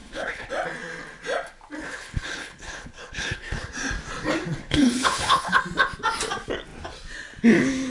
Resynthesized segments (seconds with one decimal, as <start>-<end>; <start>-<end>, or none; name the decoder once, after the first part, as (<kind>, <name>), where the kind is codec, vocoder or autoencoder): 0.0-0.5 (codec, HILCodec); 1.8-3.7; 4.6-5.6